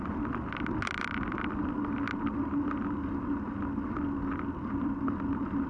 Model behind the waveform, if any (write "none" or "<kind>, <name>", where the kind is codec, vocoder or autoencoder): none